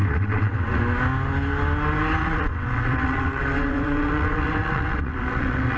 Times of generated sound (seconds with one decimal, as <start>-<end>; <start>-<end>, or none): 0.0-0.8; 2.2-5.8